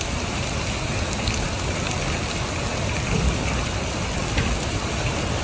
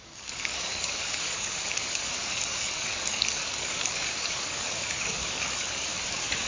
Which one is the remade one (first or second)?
second